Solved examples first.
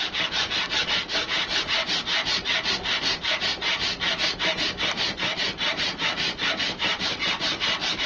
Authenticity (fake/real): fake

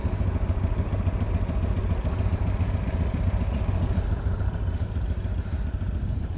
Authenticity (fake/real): real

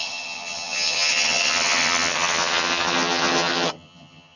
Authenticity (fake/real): fake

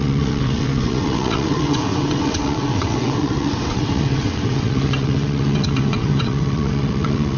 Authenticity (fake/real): fake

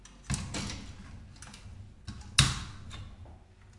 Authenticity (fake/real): real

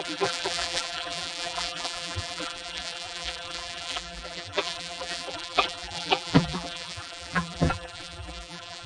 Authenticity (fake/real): fake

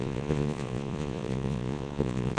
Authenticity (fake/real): fake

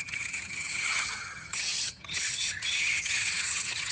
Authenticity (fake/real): fake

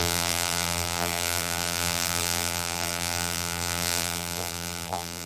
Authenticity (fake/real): fake